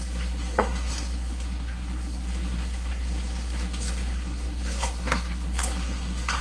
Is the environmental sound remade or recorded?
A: remade